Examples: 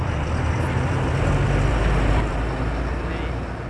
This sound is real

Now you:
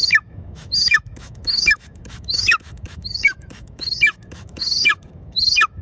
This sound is fake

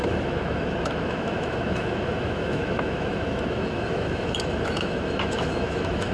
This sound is fake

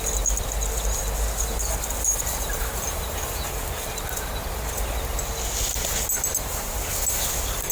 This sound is real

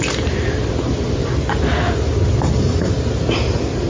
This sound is real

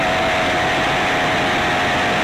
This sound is real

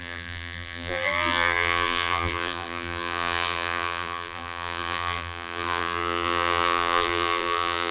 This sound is fake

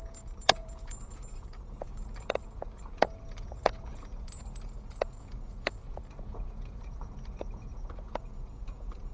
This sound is fake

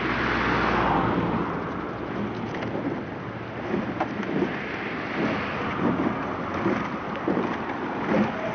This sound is real